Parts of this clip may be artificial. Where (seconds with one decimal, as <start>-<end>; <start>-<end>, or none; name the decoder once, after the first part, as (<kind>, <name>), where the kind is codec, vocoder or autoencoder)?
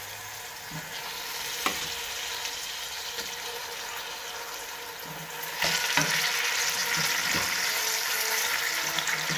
1.7-4.9 (vocoder, BigVGAN v2)